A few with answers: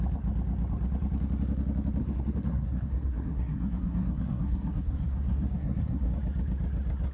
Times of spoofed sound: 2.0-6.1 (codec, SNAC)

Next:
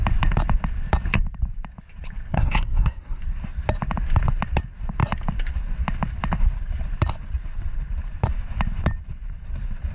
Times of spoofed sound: 2.3-3.2 (codec, SNAC)

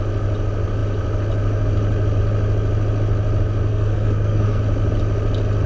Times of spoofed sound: 3.7-4.6 (codec, SNAC)

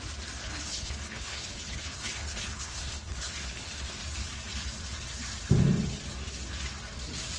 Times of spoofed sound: 0.4-4.0 (codec, HILCodec)

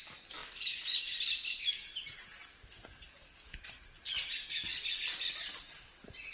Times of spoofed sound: none

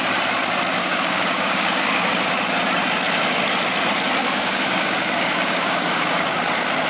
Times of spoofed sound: 0.8-2.3 (codec, DAC); 4.2-6.4

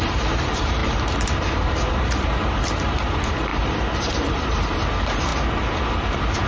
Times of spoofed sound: 0.0-3.5 (vocoder, BigVGAN v2); 4.0-5.3